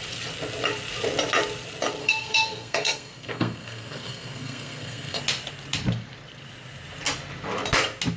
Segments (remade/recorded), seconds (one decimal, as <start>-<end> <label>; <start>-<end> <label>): 0.0-2.0 recorded; 2.0-5.2 remade; 5.2-8.2 recorded